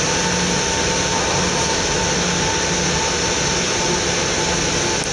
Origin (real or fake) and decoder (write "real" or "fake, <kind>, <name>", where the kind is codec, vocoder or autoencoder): real